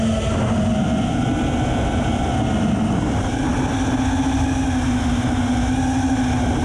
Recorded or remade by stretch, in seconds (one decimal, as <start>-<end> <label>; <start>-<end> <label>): 0.0-6.6 recorded